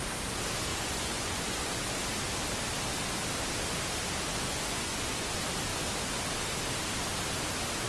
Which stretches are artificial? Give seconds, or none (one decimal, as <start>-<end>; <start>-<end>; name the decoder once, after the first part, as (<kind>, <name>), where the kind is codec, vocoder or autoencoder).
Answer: 0.7-1.8 (vocoder, Vocos); 4.3-5.3